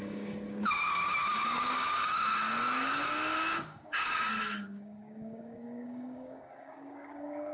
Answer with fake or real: fake